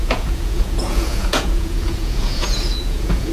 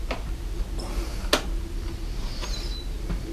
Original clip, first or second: second